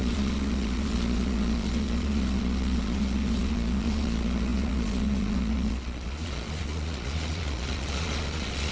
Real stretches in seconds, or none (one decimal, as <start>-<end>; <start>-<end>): none